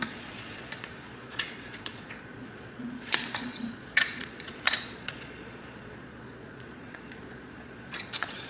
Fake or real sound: fake